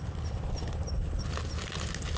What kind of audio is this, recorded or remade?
recorded